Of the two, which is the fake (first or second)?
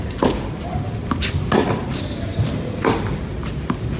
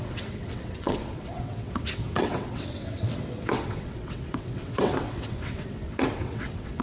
second